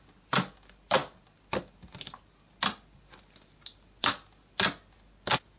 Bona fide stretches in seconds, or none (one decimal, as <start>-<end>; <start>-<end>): 0.0-5.6